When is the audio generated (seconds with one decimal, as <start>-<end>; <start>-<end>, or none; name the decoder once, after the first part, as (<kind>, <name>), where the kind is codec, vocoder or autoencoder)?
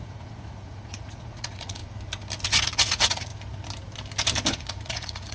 0.0-1.8 (vocoder, Vocos); 2.5-3.3; 4.5-5.3